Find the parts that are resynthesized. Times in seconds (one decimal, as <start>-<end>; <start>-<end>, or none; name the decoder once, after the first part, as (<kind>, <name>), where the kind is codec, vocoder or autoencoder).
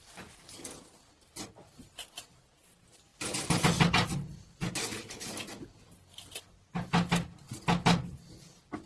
4.8-5.3 (codec, HILCodec)